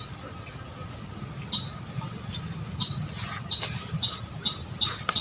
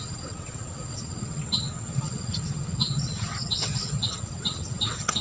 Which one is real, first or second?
first